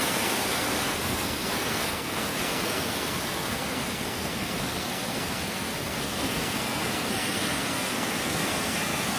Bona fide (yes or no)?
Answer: no